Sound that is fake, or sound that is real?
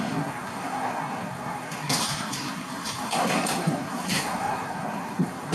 fake